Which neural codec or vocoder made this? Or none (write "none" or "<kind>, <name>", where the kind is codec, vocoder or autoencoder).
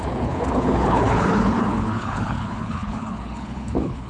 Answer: codec, HILCodec